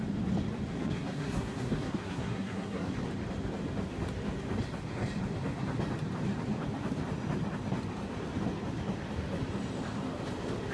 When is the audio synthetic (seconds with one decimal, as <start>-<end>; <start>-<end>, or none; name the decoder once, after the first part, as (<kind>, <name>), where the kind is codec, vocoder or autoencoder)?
0.7-2.9 (codec, SNAC)